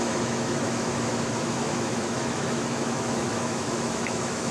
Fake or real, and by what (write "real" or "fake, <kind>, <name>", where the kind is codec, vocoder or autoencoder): fake, autoencoder, DAC-VAE